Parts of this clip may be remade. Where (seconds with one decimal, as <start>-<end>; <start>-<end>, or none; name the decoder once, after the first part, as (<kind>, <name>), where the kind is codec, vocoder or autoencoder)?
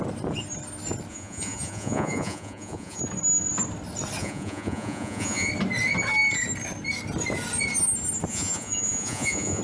1.1-3.0 (vocoder, Vocos); 4.2-5.5; 8.3-9.6